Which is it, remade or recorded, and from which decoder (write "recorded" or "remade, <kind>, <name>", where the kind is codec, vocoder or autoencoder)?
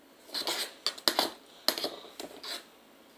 recorded